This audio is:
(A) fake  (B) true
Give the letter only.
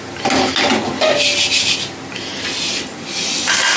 B